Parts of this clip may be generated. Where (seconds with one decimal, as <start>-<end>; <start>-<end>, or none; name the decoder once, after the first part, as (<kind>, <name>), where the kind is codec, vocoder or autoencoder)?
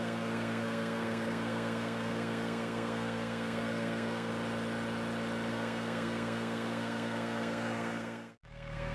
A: 0.0-4.3 (codec, SNAC); 5.5-8.9